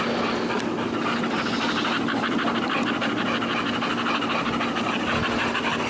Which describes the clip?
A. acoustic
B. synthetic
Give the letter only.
A